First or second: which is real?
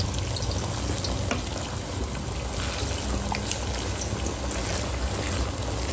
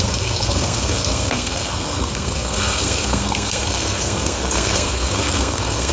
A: first